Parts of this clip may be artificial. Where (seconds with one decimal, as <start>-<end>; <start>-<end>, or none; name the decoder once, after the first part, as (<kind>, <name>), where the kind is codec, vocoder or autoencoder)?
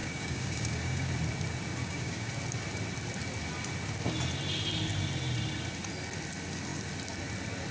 0.0-1.1 (codec, DAC); 1.8-2.3